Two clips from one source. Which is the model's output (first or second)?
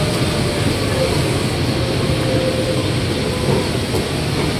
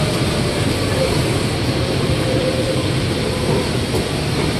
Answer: second